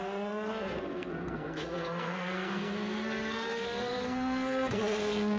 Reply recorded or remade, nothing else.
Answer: remade